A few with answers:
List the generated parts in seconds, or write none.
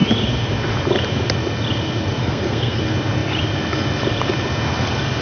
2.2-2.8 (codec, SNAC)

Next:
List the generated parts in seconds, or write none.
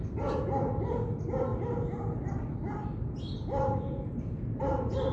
none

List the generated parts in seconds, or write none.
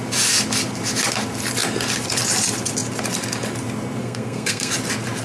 4.0-4.7 (codec, SNAC)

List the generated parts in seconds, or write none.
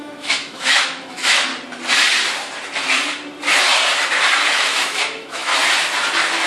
0.0-1.5 (autoencoder, DAC-VAE); 4.5-5.5